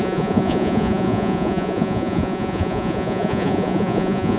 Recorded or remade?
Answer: remade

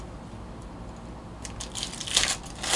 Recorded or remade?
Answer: recorded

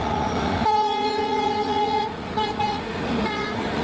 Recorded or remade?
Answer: remade